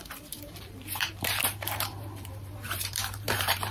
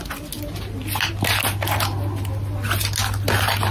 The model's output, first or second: first